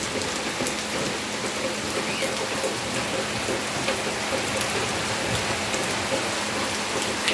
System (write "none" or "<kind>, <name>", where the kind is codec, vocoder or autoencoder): none